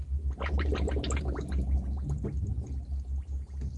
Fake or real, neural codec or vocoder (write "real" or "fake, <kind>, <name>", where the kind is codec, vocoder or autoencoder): real